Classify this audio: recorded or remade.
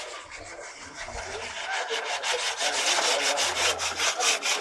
recorded